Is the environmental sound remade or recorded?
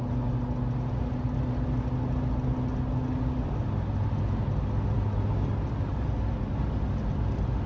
recorded